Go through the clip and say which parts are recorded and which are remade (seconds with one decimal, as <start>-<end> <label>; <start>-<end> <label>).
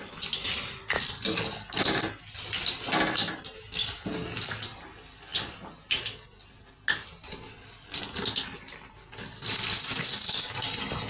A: 0.0-11.1 recorded